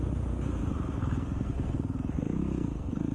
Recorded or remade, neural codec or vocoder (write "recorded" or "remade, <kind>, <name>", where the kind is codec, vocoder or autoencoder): remade, codec, SNAC